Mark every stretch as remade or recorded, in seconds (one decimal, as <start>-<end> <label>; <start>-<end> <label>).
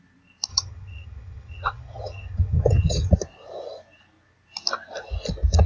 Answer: 0.0-0.5 recorded; 0.5-3.1 remade; 3.1-5.7 recorded